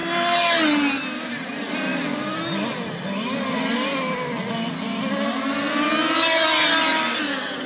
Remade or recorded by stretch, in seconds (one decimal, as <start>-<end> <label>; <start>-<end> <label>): 0.0-7.7 recorded